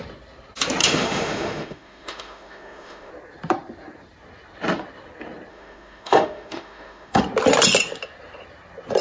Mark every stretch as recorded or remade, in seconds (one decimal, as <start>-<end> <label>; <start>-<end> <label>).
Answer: 0.0-0.8 recorded; 0.8-3.1 remade; 3.1-5.5 recorded; 5.5-7.2 remade; 7.2-9.0 recorded